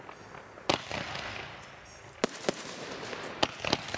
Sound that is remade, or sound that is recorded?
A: recorded